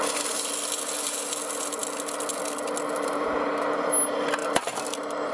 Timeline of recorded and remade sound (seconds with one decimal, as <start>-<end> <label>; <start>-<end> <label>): 0.0-5.3 recorded